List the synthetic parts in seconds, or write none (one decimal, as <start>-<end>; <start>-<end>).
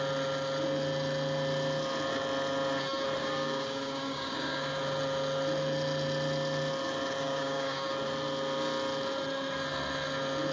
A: 3.2-4.7; 7.2-7.9